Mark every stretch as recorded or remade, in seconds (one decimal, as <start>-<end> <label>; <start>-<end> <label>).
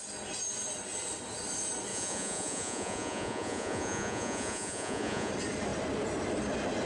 0.0-1.9 recorded; 1.9-5.3 remade; 5.3-6.9 recorded